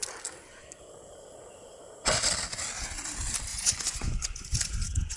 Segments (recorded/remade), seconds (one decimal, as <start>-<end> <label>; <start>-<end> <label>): 0.0-3.5 recorded; 3.5-5.2 remade